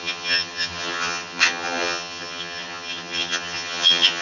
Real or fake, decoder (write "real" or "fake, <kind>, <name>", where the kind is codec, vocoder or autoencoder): fake, vocoder, HiFi-GAN